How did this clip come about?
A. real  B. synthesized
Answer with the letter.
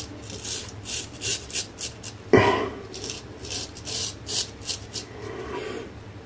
A